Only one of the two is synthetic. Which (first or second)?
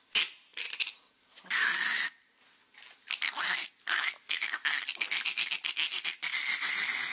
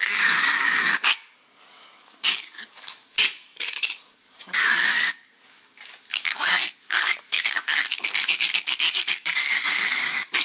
second